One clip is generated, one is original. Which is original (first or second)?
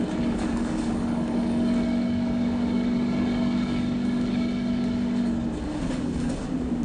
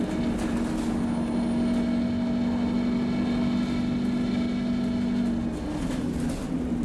second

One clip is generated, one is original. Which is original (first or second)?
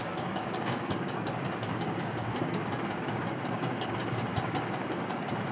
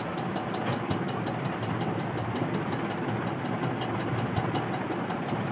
second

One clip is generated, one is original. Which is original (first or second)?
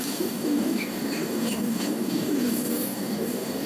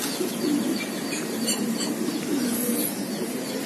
second